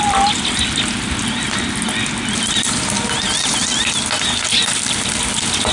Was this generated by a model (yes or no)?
no